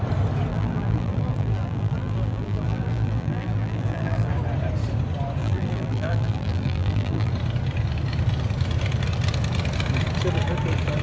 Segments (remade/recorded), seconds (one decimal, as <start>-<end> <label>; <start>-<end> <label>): 0.0-0.5 recorded; 0.5-4.3 remade; 4.3-5.4 recorded; 5.4-7.3 remade; 7.3-11.0 recorded